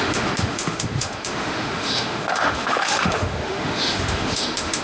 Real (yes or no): no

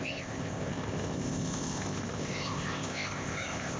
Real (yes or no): no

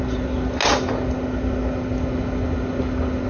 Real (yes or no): yes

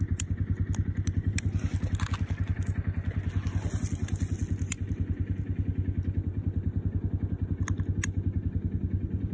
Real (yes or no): yes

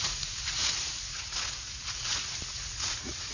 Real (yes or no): no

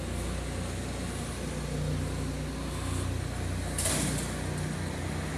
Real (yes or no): yes